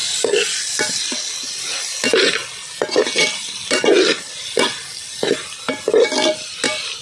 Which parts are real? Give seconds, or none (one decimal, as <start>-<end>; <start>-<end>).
0.0-7.0